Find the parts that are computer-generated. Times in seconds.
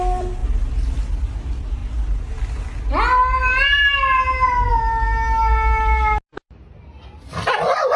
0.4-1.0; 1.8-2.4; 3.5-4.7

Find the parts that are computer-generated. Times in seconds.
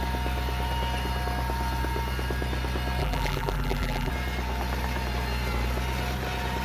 3.0-4.1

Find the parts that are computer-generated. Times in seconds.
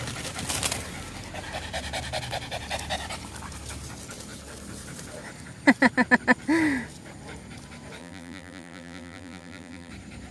8.0-9.9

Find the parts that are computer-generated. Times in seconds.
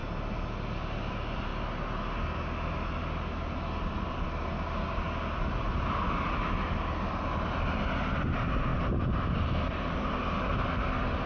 none